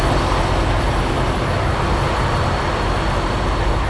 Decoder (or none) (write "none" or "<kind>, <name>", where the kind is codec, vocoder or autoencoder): none